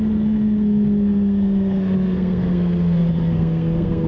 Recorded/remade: remade